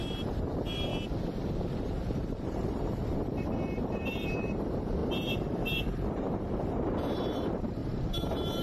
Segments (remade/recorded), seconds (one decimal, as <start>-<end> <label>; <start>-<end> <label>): 0.0-0.9 remade; 0.9-1.8 recorded; 1.8-8.6 remade